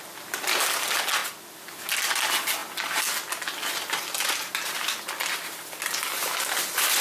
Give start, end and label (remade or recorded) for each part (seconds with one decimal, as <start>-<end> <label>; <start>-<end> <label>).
0.0-7.0 recorded